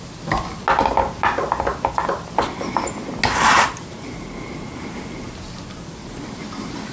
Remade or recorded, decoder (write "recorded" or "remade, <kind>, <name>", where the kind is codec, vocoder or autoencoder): recorded